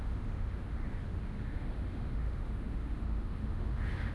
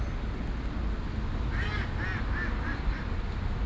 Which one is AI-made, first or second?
first